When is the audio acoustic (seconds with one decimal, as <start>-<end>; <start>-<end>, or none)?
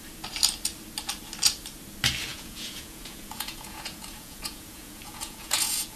0.0-2.3